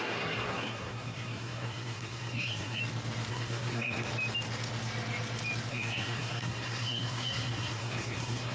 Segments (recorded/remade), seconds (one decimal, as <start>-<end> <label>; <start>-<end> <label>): 0.0-2.8 remade; 2.8-3.3 recorded; 3.3-4.1 remade; 4.1-5.7 recorded; 5.7-8.5 remade